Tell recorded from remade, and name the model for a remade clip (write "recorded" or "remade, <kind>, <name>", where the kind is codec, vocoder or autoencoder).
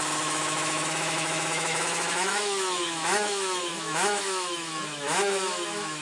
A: remade, autoencoder, DAC-VAE